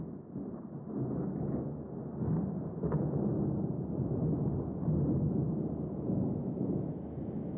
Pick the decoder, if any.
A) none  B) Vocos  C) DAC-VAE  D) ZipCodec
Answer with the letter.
A